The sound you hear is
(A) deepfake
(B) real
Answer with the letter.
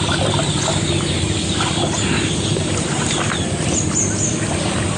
B